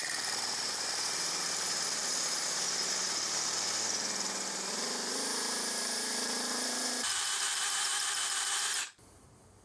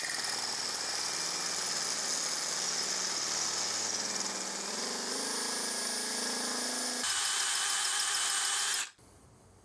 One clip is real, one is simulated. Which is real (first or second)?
second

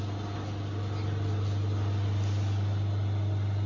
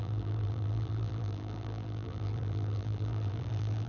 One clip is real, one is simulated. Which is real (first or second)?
first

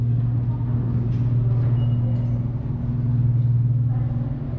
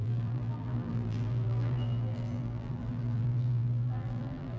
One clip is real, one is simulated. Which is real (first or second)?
first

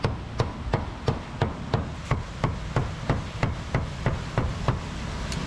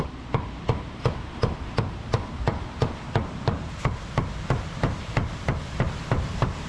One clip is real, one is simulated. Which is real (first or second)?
first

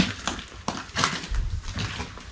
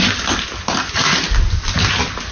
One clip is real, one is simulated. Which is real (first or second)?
second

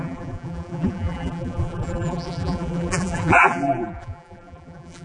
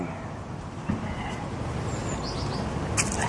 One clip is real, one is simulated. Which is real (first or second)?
second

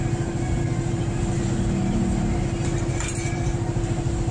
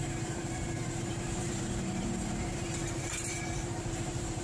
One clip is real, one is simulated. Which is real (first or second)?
first